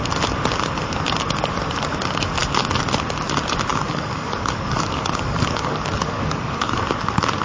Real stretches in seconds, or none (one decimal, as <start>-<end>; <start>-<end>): 0.0-3.7; 6.8-7.4